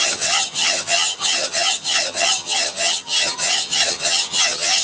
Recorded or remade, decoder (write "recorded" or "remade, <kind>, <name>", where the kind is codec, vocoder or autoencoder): remade, vocoder, HiFi-GAN